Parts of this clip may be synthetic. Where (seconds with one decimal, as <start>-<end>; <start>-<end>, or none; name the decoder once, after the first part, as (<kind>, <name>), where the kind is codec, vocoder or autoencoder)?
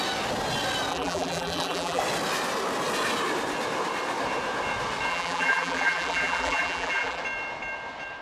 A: 0.9-2.0 (vocoder, BigVGAN v2); 5.1-7.2